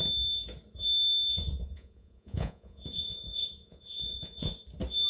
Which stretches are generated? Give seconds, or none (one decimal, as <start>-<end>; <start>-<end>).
1.4-4.5